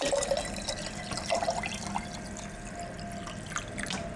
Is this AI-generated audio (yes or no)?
no